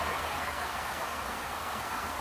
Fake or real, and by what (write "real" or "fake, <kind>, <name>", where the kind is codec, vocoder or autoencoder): fake, codec, SNAC